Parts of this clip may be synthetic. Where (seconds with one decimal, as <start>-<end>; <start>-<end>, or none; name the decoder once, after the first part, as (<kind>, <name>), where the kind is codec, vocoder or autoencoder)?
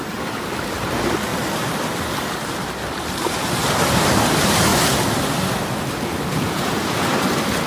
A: 6.3-7.2 (vocoder, Vocos)